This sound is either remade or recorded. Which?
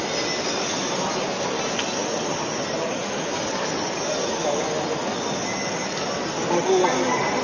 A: recorded